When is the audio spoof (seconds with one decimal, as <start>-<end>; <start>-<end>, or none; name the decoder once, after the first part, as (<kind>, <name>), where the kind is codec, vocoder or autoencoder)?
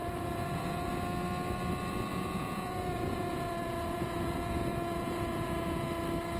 0.0-0.9 (vocoder, Vocos); 2.1-5.9